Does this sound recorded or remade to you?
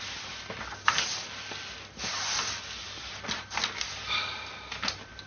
recorded